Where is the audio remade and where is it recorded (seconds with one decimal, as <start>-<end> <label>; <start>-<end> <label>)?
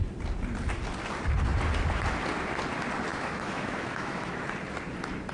0.0-3.1 recorded; 3.1-4.3 remade; 4.3-5.3 recorded